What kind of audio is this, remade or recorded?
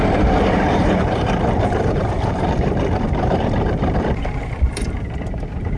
remade